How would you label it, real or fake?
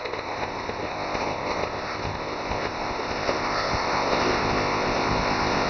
fake